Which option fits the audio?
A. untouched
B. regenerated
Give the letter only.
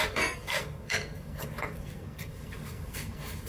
B